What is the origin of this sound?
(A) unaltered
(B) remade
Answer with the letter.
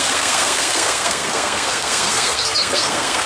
B